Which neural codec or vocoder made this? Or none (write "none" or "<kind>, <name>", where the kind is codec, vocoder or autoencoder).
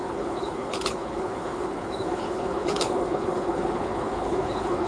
codec, HILCodec